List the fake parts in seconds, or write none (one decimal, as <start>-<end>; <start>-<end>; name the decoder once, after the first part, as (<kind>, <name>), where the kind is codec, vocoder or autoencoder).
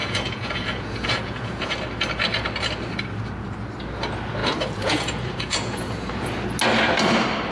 0.0-1.6 (vocoder, Vocos); 4.4-6.1